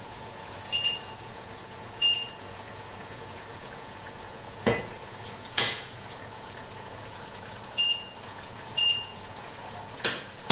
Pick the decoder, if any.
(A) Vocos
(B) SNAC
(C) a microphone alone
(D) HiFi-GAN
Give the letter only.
A